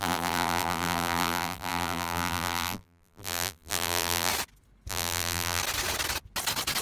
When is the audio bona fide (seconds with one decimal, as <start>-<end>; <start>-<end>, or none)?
4.3-4.9; 5.6-6.8